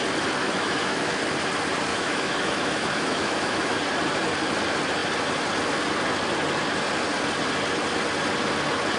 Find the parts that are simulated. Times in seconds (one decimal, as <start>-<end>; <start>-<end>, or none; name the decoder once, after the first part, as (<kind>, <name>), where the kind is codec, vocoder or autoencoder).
0.4-1.2 (autoencoder, DAC-VAE); 1.9-3.8